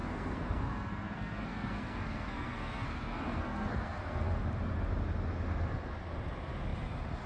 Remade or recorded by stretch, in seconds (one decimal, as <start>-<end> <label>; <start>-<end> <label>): 0.0-4.4 remade; 4.4-7.3 recorded